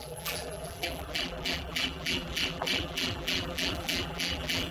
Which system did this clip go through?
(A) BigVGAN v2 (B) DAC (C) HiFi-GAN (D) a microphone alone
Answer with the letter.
A